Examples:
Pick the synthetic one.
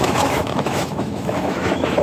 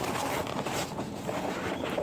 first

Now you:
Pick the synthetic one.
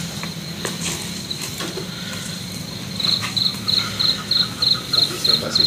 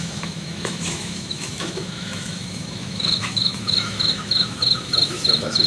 second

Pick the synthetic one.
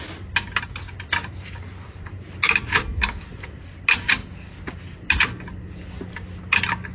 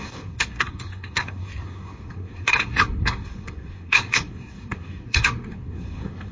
second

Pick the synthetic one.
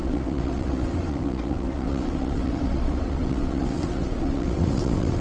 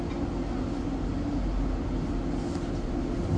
first